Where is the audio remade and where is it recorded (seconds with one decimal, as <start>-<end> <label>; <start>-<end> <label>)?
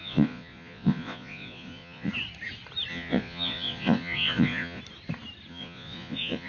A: 0.0-2.1 remade; 2.1-2.9 recorded; 2.9-4.8 remade; 4.8-5.5 recorded; 5.5-6.5 remade